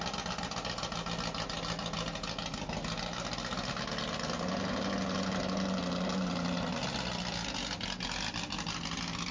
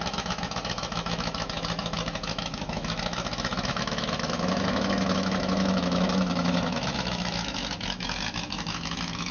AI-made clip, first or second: second